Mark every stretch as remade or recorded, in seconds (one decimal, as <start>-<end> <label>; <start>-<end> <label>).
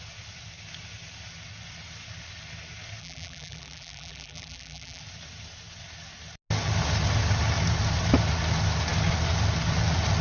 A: 0.0-3.0 recorded; 3.0-5.0 remade; 5.0-10.2 recorded